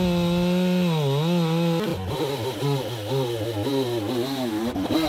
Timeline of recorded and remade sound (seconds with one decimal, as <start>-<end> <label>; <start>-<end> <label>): 0.0-5.1 recorded